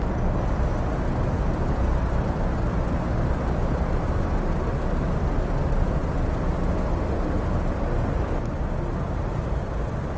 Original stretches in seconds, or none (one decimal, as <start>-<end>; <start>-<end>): 0.0-10.2

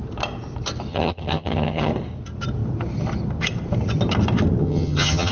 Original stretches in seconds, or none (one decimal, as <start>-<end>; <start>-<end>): 0.0-0.9; 1.9-4.6

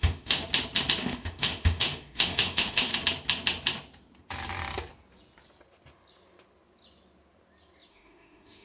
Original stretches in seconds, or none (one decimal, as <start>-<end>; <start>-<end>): 0.4-1.0; 2.9-7.9

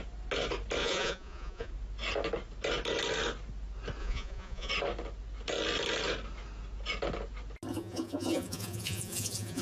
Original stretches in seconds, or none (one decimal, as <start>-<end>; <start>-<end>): 0.0-0.8; 1.7-4.0; 4.7-7.7

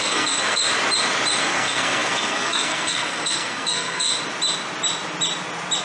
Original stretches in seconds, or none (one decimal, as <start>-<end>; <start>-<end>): 0.6-1.4; 4.1-5.8

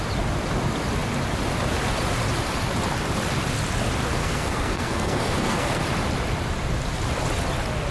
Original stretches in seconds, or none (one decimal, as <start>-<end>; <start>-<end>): 0.0-4.2; 5.8-7.9